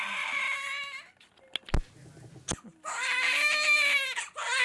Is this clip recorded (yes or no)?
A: yes